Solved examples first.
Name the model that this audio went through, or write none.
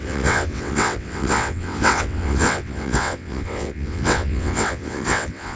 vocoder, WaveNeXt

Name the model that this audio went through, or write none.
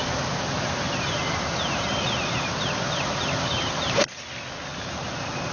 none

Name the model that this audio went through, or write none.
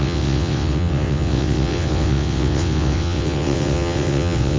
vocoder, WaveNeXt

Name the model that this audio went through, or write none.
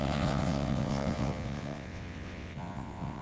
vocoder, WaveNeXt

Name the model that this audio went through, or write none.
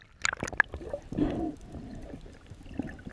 none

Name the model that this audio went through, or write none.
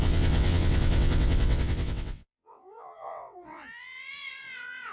vocoder, WaveNeXt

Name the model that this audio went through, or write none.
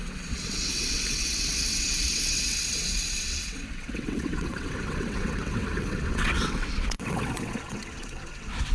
vocoder, WaveNeXt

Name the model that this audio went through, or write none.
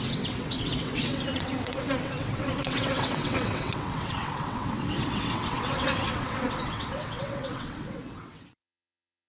vocoder, WaveNeXt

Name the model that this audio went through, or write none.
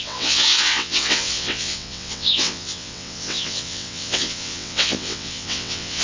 vocoder, WaveNeXt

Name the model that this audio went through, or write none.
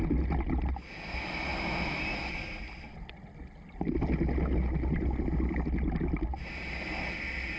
none